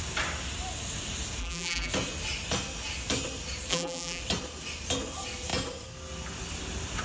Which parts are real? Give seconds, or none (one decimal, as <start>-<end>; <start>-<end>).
0.0-1.4; 1.9-3.7; 4.2-7.0